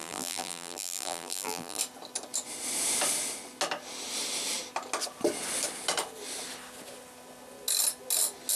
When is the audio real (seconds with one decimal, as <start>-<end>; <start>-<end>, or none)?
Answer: 1.8-8.6